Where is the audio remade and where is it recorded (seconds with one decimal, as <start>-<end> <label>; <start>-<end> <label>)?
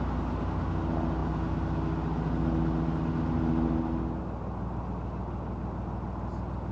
0.0-6.7 recorded